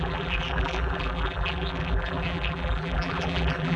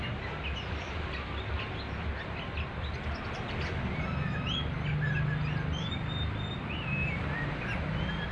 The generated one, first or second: first